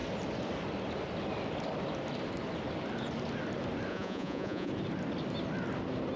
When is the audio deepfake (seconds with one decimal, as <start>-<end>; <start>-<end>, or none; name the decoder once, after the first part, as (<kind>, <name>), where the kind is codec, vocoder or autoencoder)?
3.9-4.7 (vocoder, Vocos)